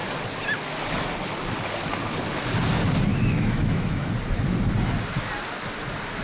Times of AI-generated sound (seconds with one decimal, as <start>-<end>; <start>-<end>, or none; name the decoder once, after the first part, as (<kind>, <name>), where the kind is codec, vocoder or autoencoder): 3.1-4.1 (autoencoder, DAC-VAE)